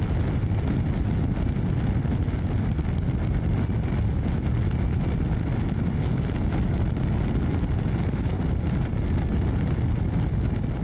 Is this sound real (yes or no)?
yes